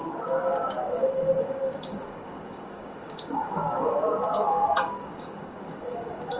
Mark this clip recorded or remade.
remade